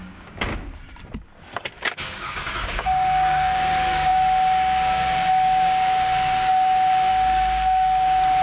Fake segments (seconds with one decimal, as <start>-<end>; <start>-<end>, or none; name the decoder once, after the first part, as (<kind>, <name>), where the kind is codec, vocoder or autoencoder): 0.0-0.5 (codec, DAC); 1.8-8.4